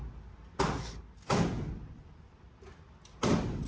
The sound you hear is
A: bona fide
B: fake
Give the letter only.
A